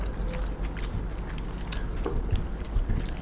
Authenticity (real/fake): real